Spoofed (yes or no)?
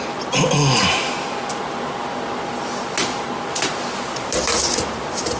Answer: no